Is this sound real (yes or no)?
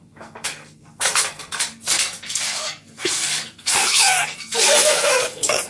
no